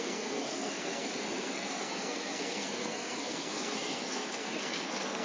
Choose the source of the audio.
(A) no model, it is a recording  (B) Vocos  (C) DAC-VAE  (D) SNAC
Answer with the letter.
D